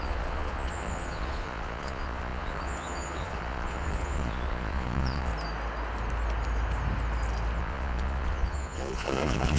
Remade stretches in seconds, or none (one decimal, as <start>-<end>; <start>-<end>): 0.0-5.3; 7.6-9.6